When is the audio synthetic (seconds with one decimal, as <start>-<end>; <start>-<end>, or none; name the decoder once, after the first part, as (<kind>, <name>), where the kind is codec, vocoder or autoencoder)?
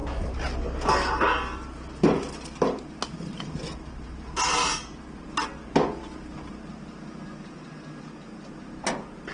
none